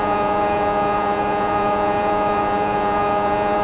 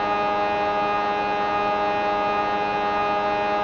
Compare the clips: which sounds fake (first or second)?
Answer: first